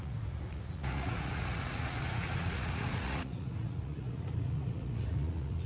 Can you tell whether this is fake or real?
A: fake